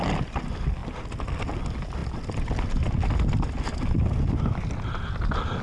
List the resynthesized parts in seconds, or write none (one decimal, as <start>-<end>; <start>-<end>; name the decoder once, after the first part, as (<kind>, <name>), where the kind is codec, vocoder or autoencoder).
none